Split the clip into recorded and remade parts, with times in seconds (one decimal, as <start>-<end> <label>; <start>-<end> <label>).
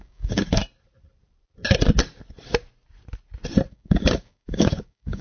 0.0-0.6 remade; 0.6-3.7 recorded; 3.7-5.2 remade